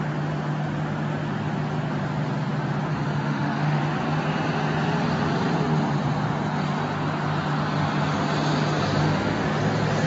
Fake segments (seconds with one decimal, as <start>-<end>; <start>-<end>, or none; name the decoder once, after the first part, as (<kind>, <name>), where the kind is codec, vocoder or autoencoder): 2.9-3.8 (autoencoder, DAC-VAE); 9.0-9.6